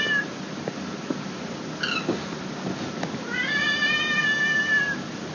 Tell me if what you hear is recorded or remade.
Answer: recorded